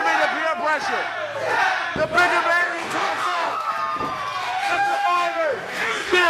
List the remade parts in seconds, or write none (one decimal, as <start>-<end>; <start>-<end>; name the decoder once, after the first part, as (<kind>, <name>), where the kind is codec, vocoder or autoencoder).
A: 2.6-3.7 (codec, DAC); 4.4-6.3